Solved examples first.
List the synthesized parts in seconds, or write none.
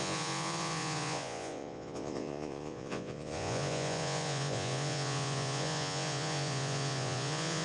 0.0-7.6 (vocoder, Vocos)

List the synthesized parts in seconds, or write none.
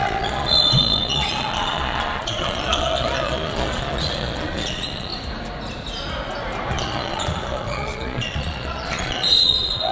0.0-5.1 (vocoder, Vocos); 6.7-9.9